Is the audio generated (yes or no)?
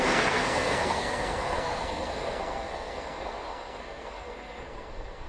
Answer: yes